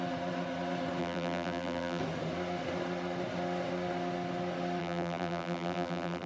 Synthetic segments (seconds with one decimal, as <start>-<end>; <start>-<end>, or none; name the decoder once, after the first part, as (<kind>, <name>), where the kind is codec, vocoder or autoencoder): 1.0-2.0 (vocoder, BigVGAN v2); 4.8-6.3